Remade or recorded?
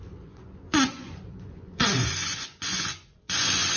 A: remade